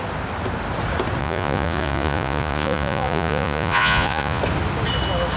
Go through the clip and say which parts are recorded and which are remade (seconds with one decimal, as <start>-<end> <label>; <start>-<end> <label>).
0.0-1.2 recorded; 1.2-4.4 remade; 4.4-5.4 recorded